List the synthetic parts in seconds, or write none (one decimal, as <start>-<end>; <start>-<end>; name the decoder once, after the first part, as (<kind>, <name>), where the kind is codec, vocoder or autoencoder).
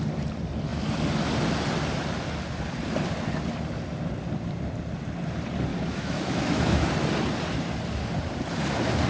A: 5.7-6.9 (autoencoder, DAC-VAE)